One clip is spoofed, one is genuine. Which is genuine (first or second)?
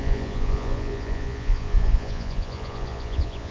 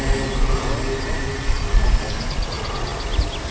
second